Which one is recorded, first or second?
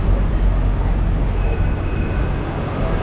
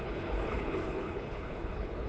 first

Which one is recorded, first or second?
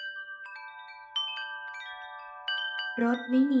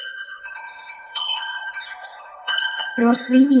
first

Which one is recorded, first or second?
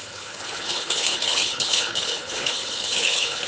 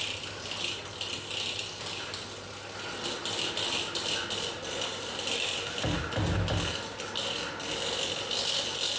second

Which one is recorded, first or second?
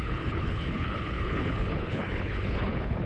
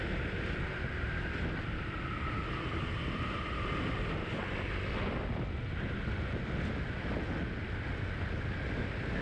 second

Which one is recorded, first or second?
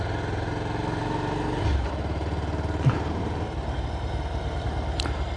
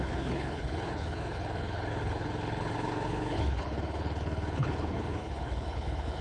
first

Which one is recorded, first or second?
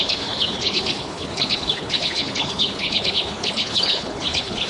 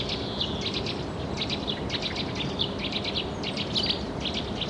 second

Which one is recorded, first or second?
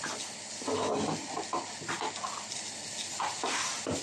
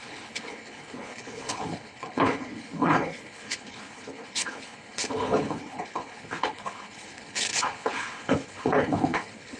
first